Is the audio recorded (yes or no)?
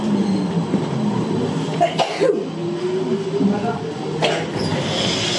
yes